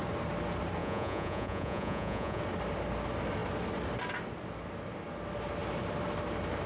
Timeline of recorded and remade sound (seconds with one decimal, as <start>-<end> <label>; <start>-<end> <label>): 0.0-0.8 recorded; 0.8-2.4 remade; 2.4-6.7 recorded